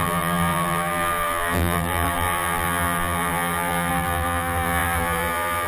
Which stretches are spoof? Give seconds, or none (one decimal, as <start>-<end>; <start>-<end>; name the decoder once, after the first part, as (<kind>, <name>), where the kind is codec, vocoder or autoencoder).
0.0-5.7 (vocoder, BigVGAN v2)